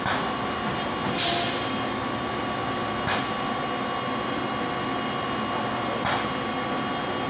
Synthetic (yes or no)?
no